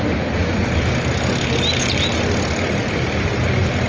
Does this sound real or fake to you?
real